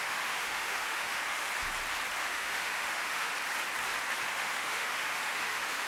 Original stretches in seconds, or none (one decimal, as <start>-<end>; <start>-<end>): 1.5-2.2; 3.3-4.3